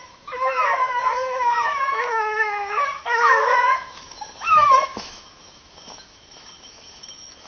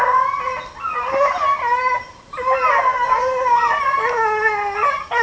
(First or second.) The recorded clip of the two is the second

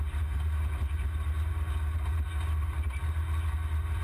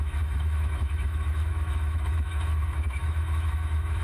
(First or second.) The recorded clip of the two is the first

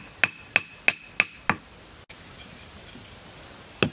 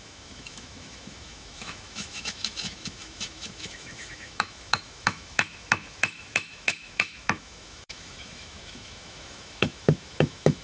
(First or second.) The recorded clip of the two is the first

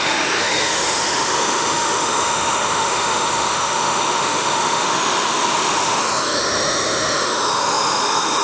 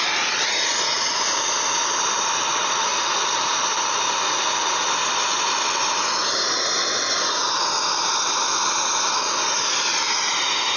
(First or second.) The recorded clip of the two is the second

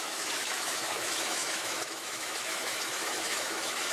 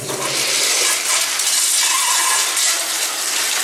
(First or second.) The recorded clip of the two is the second